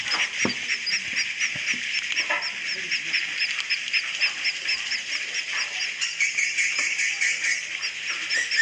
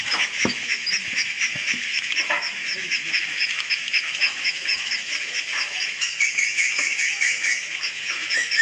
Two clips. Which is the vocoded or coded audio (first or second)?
second